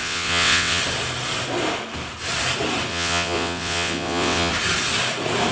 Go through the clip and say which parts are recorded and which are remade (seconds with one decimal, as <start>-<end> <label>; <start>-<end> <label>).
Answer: 0.0-0.8 remade; 0.8-2.9 recorded; 2.9-4.5 remade; 4.5-5.5 recorded